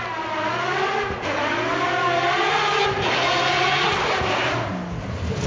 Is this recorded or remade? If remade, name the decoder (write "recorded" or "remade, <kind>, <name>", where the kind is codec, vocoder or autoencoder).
recorded